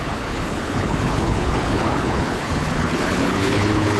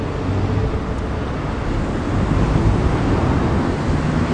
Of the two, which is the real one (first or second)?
second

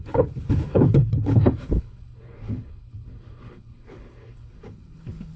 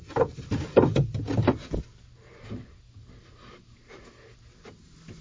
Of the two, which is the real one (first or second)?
second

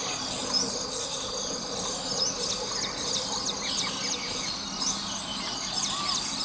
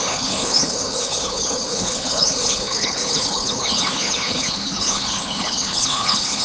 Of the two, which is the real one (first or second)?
first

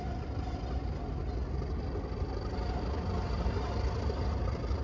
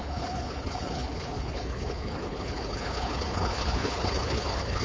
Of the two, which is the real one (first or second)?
first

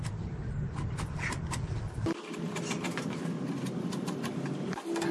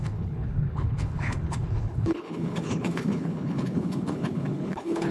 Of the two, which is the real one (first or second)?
first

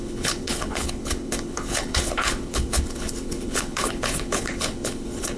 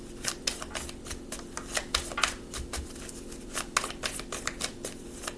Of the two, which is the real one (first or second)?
second